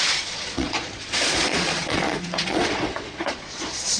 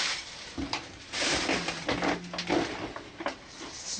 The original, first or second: second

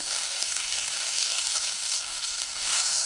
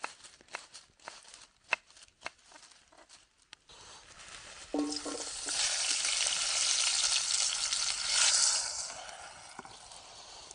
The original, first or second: second